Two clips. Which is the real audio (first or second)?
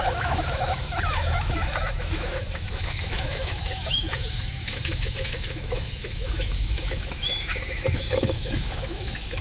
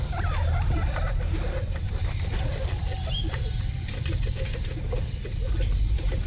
second